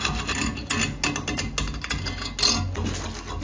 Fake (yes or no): no